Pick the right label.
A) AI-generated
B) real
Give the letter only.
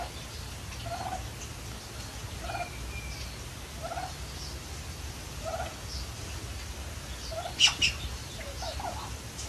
B